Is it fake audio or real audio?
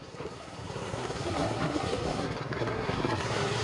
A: fake